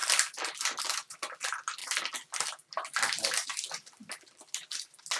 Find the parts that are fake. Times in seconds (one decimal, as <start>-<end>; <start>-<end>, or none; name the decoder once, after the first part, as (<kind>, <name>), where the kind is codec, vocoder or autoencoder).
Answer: 1.8-5.2 (vocoder, BigVGAN v2)